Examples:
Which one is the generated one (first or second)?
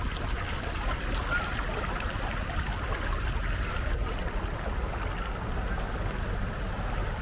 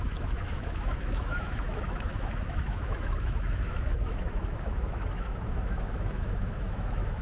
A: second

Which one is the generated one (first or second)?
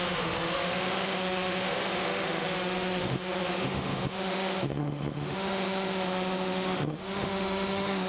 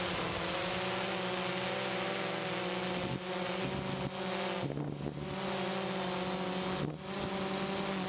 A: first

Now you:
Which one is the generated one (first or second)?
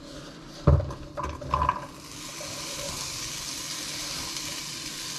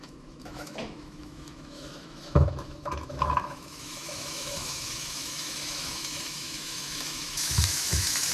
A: second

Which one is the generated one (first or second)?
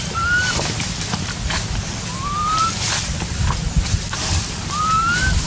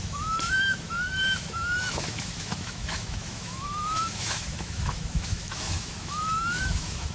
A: second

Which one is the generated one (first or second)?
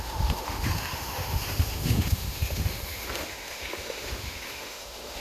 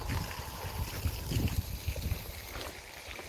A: first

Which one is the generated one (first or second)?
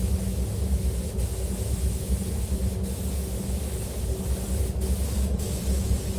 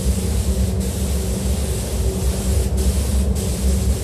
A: first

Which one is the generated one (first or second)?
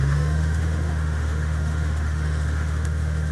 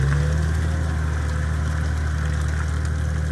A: first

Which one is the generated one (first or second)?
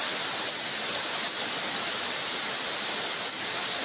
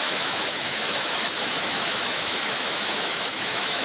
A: second